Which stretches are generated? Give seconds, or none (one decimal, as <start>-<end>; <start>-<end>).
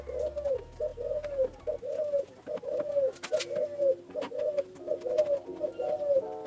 none